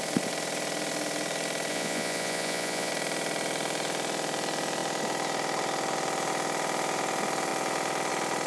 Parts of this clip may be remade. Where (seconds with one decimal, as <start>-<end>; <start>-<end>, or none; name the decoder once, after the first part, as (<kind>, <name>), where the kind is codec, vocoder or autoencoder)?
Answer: 1.7-2.9 (vocoder, Vocos)